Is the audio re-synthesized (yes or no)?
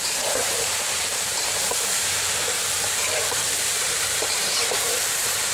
yes